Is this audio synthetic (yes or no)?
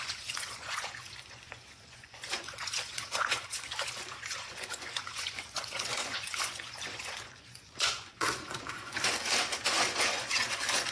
yes